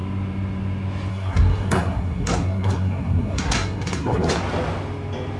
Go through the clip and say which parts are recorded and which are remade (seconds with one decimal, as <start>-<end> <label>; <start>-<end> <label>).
0.0-1.1 recorded; 1.1-4.3 remade; 4.3-5.4 recorded